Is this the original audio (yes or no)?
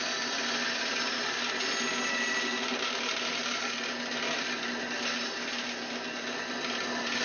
yes